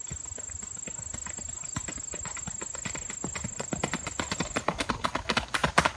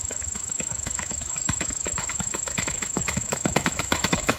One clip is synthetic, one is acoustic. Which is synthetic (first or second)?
second